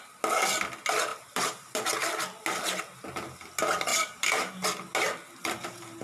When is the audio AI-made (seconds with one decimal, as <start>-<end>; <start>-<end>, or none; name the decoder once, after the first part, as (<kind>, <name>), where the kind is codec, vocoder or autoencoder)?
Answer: 1.1-1.7 (vocoder, BigVGAN v2); 3.9-4.5